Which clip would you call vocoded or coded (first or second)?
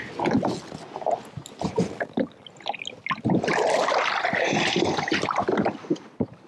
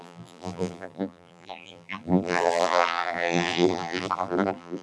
second